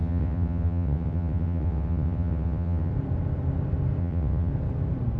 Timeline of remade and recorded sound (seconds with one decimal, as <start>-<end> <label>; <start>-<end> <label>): 0.0-2.9 remade; 2.9-4.0 recorded; 4.0-4.5 remade; 4.5-5.2 recorded